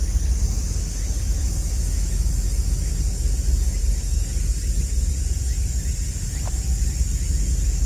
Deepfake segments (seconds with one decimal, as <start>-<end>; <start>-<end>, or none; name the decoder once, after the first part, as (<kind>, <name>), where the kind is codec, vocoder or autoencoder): 1.4-2.3 (autoencoder, DAC-VAE)